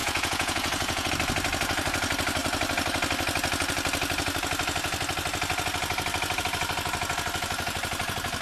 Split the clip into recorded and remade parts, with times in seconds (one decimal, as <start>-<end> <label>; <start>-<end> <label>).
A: 0.0-1.1 remade; 1.1-8.4 recorded